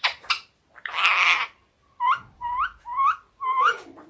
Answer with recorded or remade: remade